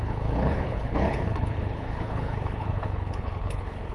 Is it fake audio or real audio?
fake